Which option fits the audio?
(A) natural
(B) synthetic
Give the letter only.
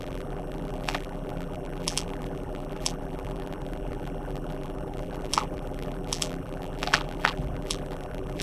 B